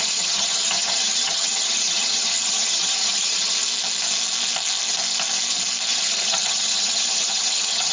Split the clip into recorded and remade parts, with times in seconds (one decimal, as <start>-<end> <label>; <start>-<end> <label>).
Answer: 0.0-3.6 remade; 3.6-5.9 recorded; 5.9-7.9 remade